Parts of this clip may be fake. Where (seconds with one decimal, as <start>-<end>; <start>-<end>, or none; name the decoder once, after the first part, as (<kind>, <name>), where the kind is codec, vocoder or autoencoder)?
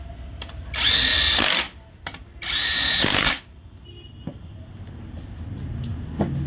none